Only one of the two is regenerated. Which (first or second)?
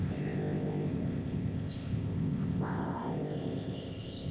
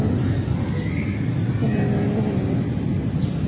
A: first